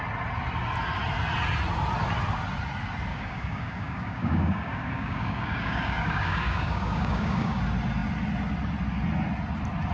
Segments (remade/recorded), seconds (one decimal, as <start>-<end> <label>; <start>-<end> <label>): 0.0-3.1 recorded; 3.1-7.6 remade; 7.6-9.9 recorded